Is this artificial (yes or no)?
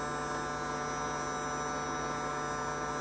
no